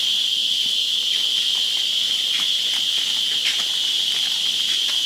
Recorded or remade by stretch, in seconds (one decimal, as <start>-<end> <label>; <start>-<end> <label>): 0.0-3.8 recorded; 3.8-4.4 remade; 4.4-5.1 recorded